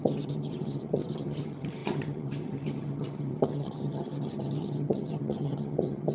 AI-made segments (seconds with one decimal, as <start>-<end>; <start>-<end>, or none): 0.0-6.1